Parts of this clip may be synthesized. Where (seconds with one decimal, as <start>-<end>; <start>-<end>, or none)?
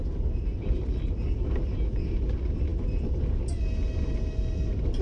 none